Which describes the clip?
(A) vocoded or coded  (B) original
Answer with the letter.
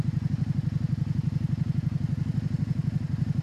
B